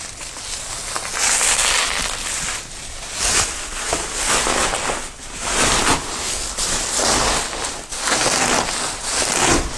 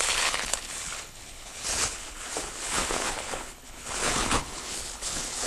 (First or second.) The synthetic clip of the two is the second